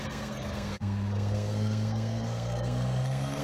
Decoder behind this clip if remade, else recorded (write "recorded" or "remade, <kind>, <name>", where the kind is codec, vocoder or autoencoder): remade, codec, SNAC